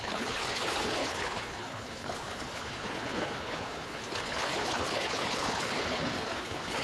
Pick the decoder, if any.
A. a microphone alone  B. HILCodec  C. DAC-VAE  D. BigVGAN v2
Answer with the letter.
B